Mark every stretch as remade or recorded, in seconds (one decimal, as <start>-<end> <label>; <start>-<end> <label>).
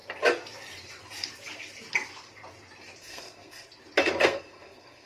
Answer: 0.0-3.0 recorded; 3.0-3.7 remade; 3.7-4.2 recorded; 4.2-5.1 remade